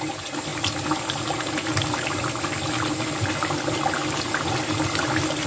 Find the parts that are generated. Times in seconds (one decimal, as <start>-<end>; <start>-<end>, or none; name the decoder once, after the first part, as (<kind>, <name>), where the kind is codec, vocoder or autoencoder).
none